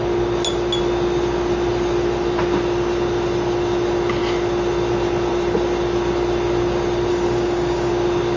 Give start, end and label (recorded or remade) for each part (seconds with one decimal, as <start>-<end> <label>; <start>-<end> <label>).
0.0-7.1 recorded; 7.1-7.9 remade; 7.9-8.4 recorded